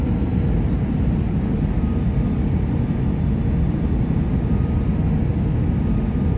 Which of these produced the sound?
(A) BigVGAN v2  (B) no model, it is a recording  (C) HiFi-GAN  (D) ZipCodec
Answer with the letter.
B